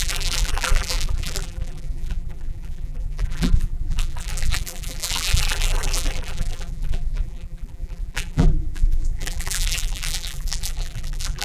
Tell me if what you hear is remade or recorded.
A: remade